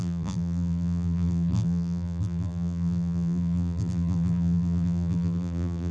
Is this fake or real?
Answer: fake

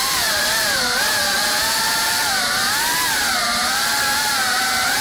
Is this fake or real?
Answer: fake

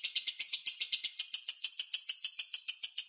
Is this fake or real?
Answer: real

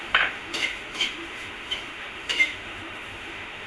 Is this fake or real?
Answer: fake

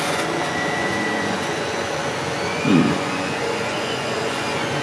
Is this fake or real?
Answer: fake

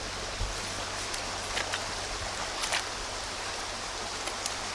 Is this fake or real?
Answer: real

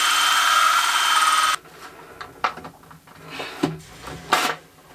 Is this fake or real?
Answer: real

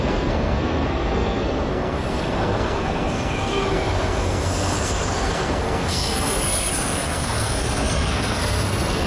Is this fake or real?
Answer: fake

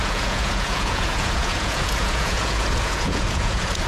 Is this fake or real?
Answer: fake